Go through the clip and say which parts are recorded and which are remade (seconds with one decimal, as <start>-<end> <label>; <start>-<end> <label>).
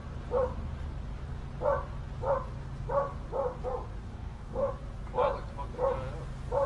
0.0-4.1 recorded; 4.1-4.7 remade; 4.7-6.7 recorded